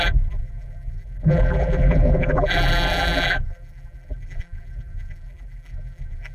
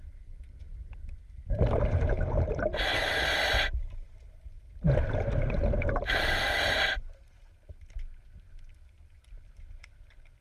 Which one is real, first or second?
second